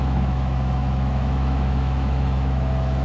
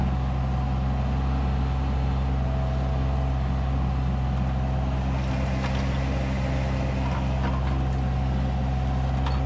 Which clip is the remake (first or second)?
first